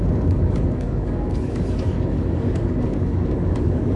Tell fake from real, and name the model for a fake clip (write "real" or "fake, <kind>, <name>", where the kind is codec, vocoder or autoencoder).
fake, codec, DAC